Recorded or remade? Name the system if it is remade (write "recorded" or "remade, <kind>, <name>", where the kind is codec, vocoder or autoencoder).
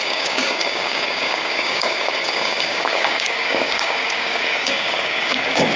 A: remade, codec, DAC